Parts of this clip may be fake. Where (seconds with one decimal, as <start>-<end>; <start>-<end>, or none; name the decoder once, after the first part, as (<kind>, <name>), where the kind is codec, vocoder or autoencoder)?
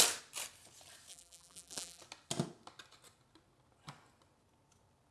1.1-2.0 (vocoder, BigVGAN v2)